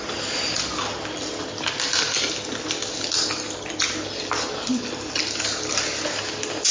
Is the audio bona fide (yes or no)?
yes